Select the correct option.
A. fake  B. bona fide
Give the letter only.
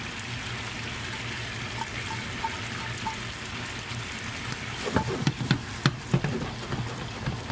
B